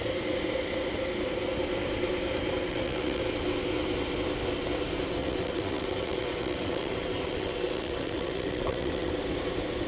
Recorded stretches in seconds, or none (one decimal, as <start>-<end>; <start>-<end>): 0.0-2.7; 3.2-5.2; 9.1-9.9